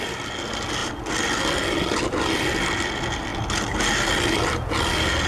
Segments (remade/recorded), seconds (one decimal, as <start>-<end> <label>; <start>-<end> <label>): 0.0-5.3 recorded